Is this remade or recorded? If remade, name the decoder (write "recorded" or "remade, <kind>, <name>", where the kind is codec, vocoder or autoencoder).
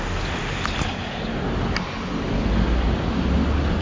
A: recorded